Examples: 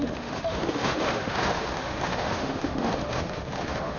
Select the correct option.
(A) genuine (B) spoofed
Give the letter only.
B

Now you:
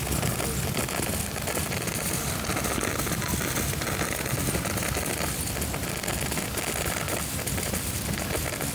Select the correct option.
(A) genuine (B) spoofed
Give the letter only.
A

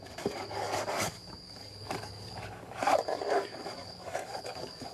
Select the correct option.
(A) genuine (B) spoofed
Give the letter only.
B